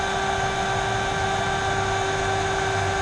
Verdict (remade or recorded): recorded